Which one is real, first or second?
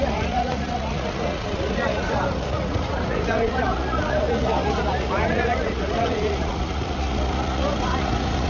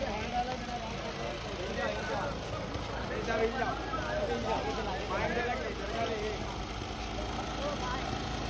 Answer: second